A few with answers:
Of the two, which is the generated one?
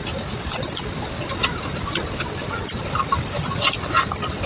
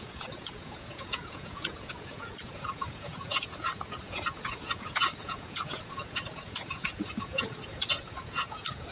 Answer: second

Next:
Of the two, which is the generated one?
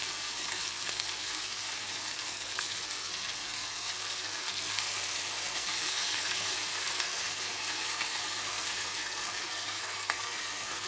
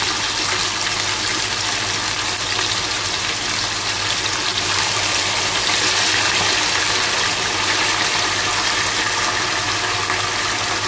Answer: first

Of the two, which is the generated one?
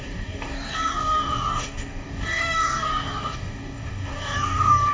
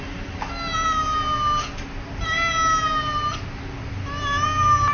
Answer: first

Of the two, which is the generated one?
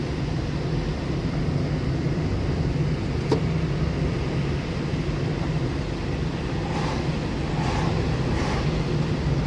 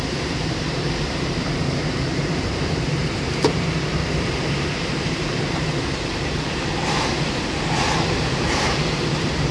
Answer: second